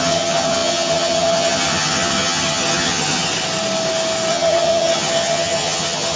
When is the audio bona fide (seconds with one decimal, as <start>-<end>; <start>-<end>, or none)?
3.3-4.3